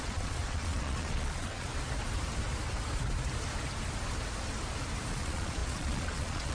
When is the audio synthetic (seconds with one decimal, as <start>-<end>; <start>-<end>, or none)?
0.0-1.7; 5.1-6.5